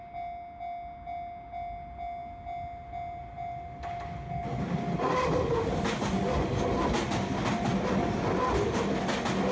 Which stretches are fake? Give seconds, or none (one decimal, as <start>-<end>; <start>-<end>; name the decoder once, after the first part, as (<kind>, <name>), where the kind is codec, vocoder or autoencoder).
none